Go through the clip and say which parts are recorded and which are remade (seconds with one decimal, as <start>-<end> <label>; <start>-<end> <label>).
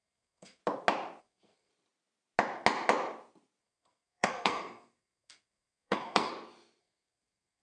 0.0-0.6 remade; 0.6-1.2 recorded; 1.2-1.7 remade; 1.7-3.6 recorded; 3.6-6.3 remade; 6.3-6.8 recorded; 6.8-7.6 remade